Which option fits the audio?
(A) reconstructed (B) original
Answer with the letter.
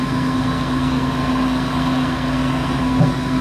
A